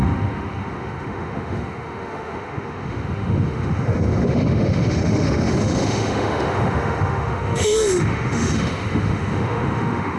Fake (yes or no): yes